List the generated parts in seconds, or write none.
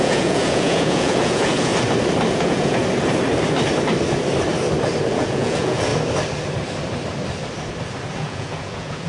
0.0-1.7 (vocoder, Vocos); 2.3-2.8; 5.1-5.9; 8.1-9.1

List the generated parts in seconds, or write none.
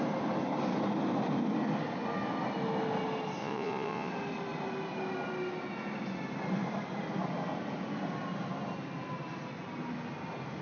3.4-4.1 (vocoder, Vocos)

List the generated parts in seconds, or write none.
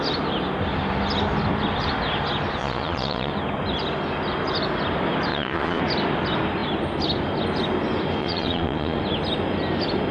2.6-3.3 (vocoder, Vocos); 5.3-5.8; 8.2-9.0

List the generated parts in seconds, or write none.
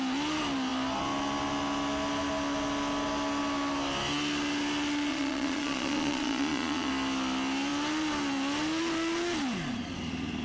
5.1-6.9 (vocoder, Vocos)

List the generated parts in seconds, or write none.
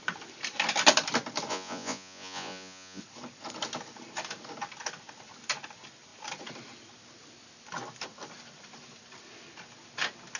1.5-3.0 (vocoder, Vocos)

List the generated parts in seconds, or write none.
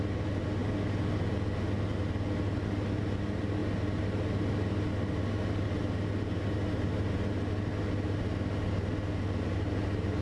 none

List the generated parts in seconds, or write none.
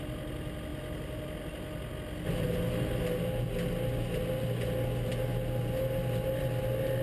none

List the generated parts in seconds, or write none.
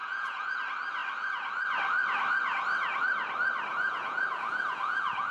0.0-0.6 (vocoder, Vocos); 3.7-5.3